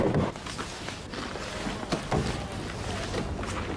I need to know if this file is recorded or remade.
recorded